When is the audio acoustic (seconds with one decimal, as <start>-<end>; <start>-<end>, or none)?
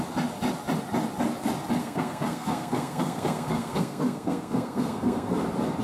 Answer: 0.0-1.8; 5.3-5.8